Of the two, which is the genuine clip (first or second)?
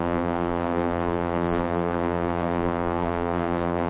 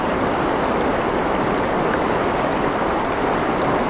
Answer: second